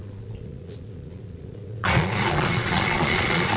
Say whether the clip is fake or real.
fake